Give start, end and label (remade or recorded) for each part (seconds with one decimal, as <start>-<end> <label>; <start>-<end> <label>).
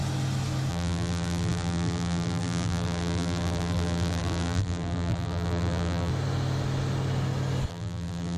0.0-0.7 recorded; 0.7-6.1 remade; 6.1-7.7 recorded; 7.7-8.4 remade